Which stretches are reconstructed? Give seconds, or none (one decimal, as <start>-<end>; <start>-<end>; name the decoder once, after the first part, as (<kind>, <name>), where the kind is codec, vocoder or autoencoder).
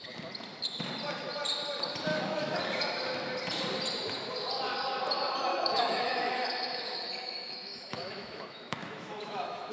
2.1-2.6 (autoencoder, DAC-VAE); 5.5-9.7